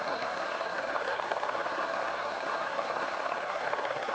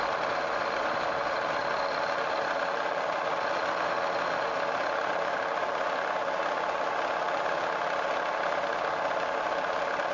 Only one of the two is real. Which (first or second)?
second